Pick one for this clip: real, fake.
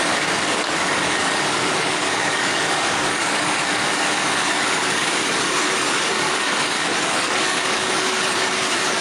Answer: fake